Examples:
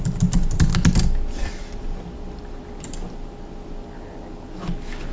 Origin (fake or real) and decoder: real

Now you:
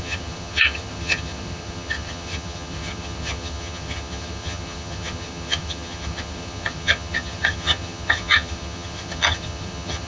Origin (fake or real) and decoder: fake, vocoder, HiFi-GAN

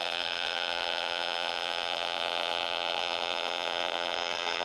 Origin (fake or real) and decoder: fake, vocoder, BigVGAN v2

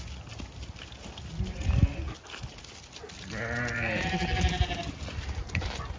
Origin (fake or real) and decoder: real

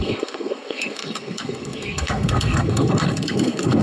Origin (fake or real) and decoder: fake, codec, SNAC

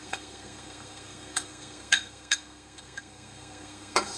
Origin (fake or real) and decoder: fake, codec, SNAC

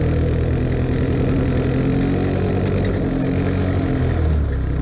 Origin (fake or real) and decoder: real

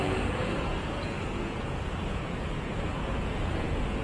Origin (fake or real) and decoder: fake, vocoder, Vocos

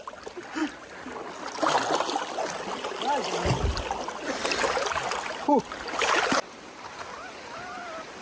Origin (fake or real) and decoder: real